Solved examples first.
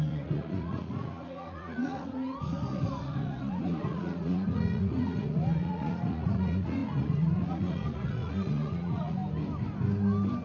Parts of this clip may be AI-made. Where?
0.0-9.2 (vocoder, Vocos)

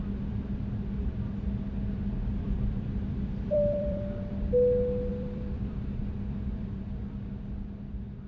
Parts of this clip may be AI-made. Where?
2.3-4.2 (vocoder, BigVGAN v2); 5.1-6.8

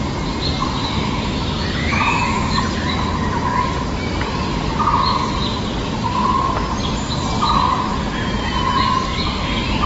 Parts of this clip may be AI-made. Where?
1.8-2.6 (autoencoder, DAC-VAE)

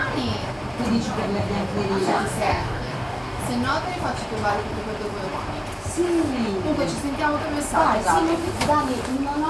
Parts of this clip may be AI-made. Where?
2.0-3.4 (codec, DAC)